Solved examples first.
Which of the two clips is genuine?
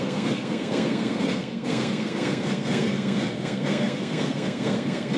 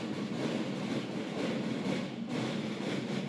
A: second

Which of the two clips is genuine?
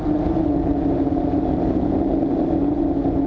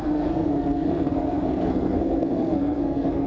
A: first